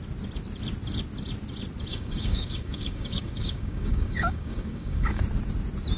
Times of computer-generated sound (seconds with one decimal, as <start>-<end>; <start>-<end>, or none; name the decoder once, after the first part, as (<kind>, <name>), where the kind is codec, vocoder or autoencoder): 1.9-5.2 (codec, DAC)